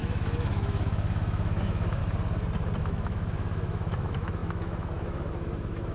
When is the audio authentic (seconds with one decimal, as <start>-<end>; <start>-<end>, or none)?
2.0-2.8